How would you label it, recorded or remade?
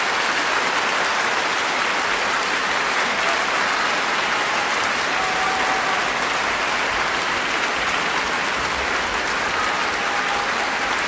recorded